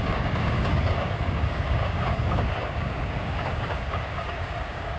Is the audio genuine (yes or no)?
no